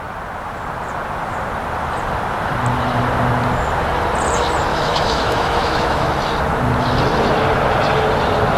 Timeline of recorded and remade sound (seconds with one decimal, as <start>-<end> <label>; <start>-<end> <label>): 0.0-4.7 recorded; 4.7-6.1 remade; 6.1-8.6 recorded